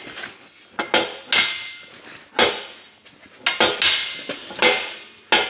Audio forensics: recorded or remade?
recorded